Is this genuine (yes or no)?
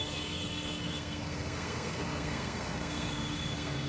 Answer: no